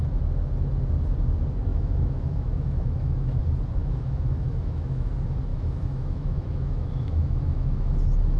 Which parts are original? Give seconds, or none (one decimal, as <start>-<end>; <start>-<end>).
0.0-1.7; 3.4-3.8; 5.1-5.5; 8.0-8.4